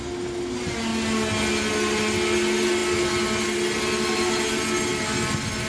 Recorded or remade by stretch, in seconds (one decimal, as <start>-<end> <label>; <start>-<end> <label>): 0.0-5.7 recorded